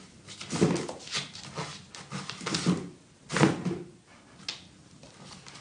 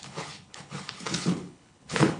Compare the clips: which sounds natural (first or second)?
first